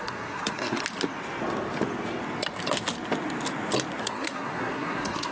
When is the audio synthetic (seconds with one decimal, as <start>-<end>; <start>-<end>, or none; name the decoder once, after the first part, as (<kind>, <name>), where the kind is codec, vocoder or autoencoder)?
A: 0.0-0.8 (codec, SNAC); 4.0-5.3